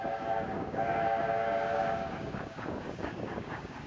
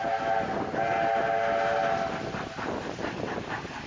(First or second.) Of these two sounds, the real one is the second